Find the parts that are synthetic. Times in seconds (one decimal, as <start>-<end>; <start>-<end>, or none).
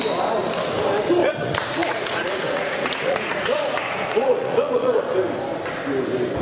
1.2-5.0